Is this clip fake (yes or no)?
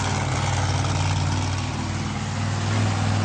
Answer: no